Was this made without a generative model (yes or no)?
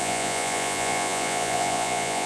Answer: no